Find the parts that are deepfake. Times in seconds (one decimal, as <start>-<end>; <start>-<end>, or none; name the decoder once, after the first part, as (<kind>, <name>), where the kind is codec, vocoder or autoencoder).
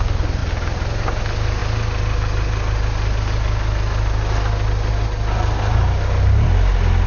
none